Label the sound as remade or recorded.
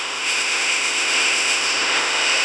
remade